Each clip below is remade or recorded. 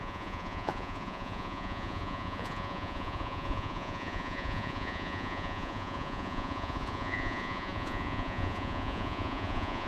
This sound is remade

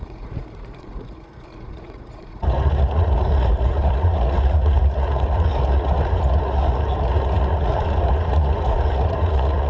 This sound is remade